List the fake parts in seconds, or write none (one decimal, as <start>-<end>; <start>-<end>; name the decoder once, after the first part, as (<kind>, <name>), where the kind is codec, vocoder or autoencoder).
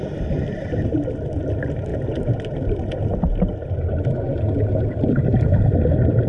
none